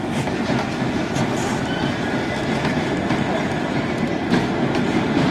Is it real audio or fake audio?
real